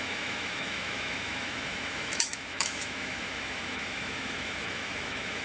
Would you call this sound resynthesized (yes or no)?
yes